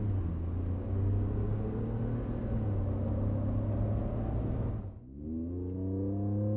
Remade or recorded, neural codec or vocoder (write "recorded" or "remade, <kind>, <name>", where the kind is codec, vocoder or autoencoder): recorded